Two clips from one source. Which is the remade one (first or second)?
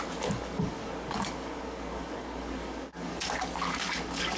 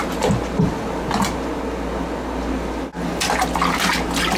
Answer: first